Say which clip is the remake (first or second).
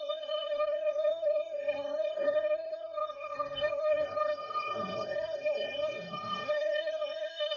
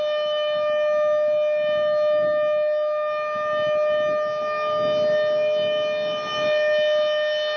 first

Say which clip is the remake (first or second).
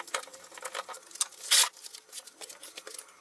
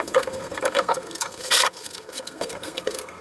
second